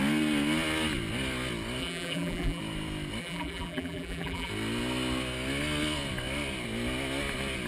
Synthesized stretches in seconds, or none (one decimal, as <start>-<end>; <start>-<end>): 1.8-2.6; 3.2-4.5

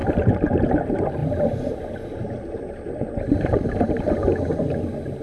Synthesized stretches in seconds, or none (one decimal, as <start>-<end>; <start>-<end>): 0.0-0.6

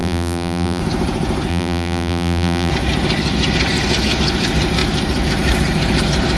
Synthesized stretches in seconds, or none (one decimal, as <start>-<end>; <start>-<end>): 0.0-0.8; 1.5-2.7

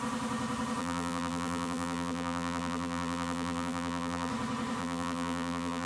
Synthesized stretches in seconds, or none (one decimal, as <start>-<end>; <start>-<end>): 0.8-4.3; 4.8-5.9

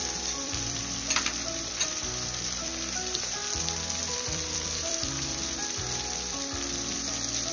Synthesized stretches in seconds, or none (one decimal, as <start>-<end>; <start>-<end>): 0.0-3.4; 4.0-7.5